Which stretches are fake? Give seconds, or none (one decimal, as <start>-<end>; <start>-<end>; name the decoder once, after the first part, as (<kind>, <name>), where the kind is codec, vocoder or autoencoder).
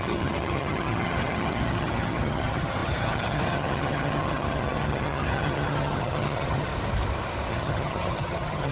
0.0-6.7 (vocoder, HiFi-GAN); 7.5-8.7